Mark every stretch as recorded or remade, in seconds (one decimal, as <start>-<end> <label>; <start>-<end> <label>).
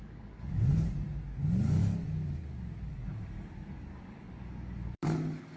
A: 0.0-5.6 remade